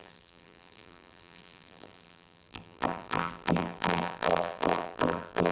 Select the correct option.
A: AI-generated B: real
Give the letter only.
A